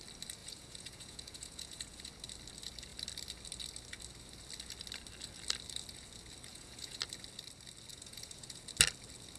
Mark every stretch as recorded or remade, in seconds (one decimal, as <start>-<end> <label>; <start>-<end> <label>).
0.0-0.4 recorded; 0.4-2.1 remade; 2.1-6.5 recorded; 6.5-7.0 remade; 7.0-7.9 recorded; 7.9-8.6 remade; 8.6-9.4 recorded